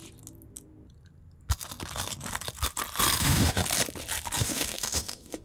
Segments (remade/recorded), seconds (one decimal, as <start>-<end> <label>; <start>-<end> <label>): 0.0-3.2 recorded; 3.2-3.6 remade; 3.6-4.4 recorded; 4.4-5.4 remade